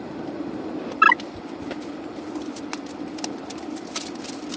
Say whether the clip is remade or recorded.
recorded